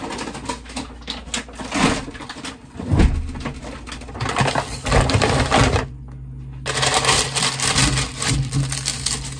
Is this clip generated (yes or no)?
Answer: no